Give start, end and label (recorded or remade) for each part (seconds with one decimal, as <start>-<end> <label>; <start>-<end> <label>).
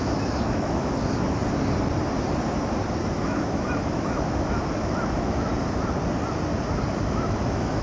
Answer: 0.0-1.4 remade; 1.4-3.0 recorded; 3.0-5.5 remade; 5.5-6.9 recorded; 6.9-7.8 remade